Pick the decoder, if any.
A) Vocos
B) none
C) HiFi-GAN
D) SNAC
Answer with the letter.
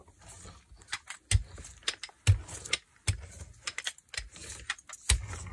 B